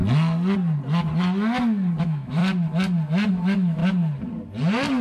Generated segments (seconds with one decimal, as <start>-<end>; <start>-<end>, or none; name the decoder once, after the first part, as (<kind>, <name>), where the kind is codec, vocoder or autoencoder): 2.0-2.4 (autoencoder, DAC-VAE); 3.3-3.8

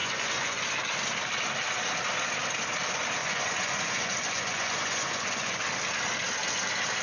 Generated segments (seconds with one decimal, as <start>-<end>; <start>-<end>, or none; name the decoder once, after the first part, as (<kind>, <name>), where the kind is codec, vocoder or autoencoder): 0.0-0.6 (vocoder, Vocos); 3.2-5.6

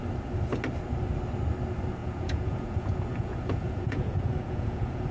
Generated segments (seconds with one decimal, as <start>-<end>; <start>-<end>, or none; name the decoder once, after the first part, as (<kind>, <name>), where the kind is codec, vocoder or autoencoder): 2.0-5.1 (vocoder, Vocos)